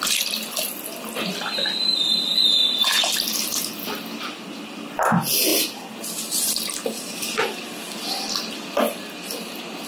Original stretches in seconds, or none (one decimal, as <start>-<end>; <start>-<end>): 0.0-9.9